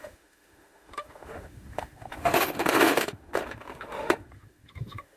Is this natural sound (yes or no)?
no